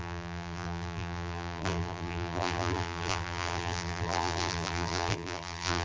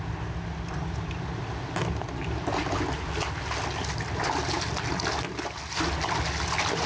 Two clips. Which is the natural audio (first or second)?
second